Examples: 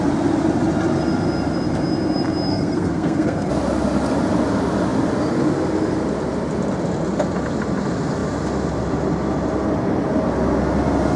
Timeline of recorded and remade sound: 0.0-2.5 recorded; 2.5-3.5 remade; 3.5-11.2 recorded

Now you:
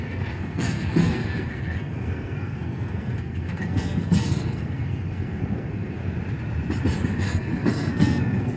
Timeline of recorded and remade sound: 0.0-6.0 remade; 6.0-7.2 recorded; 7.2-8.6 remade

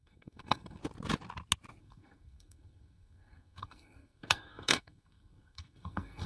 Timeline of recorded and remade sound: 0.0-0.8 remade; 0.8-1.8 recorded; 1.8-6.3 remade

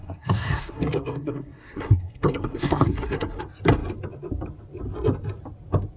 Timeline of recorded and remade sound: 0.0-3.4 remade; 3.4-6.0 recorded

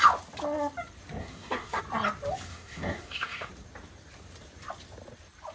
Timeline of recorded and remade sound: 0.0-1.2 recorded; 1.2-1.8 remade; 1.8-2.5 recorded; 2.5-3.5 remade; 3.5-5.5 recorded

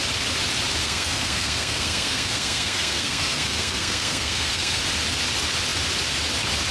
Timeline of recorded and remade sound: 0.0-0.8 recorded; 0.8-4.8 remade; 4.8-6.7 recorded